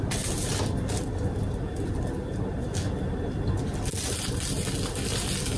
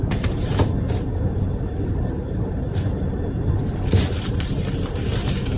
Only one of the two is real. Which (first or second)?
first